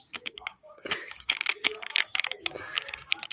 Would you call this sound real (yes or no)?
no